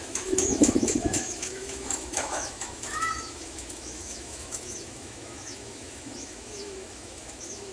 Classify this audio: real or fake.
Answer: fake